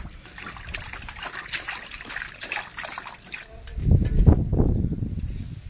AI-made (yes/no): yes